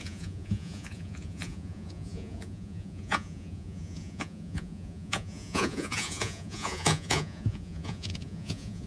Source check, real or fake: fake